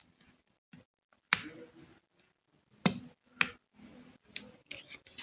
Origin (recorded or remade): recorded